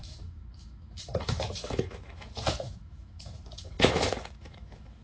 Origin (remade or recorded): remade